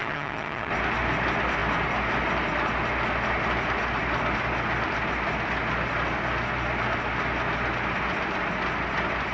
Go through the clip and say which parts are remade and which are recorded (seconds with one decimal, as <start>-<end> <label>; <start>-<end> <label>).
0.0-0.7 remade; 0.7-9.3 recorded